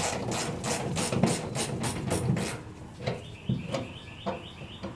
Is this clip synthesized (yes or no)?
no